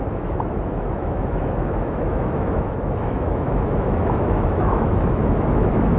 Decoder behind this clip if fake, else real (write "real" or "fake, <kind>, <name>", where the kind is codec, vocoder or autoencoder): fake, autoencoder, DAC-VAE